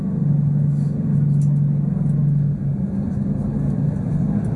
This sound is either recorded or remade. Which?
recorded